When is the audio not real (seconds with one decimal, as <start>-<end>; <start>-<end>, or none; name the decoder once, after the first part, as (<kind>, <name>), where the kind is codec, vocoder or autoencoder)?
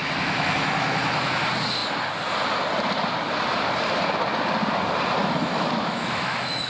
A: 0.0-1.4 (autoencoder, DAC-VAE); 5.2-6.7